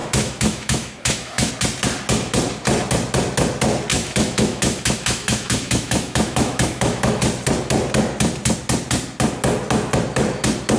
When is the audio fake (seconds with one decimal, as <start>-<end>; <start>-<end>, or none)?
0.0-1.5; 3.9-7.2